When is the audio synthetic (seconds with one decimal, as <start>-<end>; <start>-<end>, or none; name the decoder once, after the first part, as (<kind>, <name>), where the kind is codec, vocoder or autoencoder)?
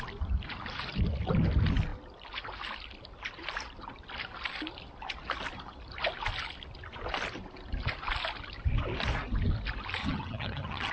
10.0-10.9 (vocoder, HiFi-GAN)